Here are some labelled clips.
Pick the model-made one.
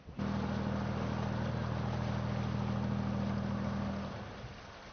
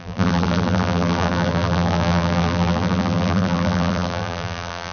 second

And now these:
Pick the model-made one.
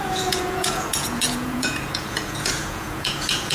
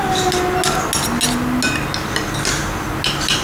first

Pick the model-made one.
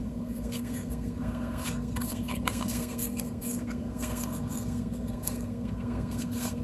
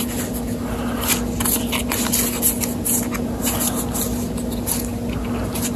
first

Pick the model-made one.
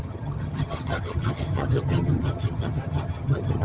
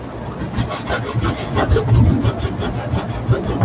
first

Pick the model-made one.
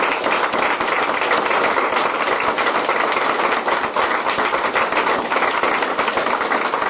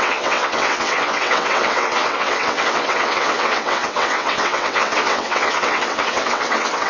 second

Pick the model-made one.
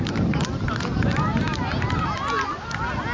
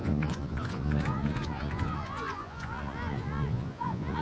second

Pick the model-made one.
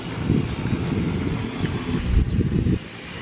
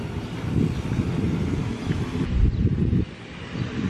second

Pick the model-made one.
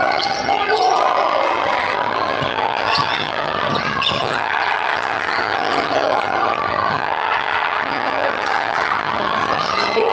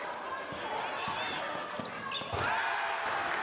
first